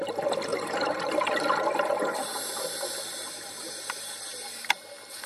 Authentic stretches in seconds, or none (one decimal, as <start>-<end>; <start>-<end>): 0.0-0.5; 3.7-5.3